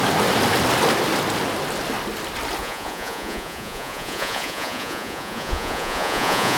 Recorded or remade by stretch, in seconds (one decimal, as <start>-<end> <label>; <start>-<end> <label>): 0.0-2.6 recorded; 2.6-6.6 remade